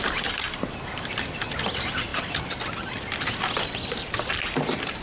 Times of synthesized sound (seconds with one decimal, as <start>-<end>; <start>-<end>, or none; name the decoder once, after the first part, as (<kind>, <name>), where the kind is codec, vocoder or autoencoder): none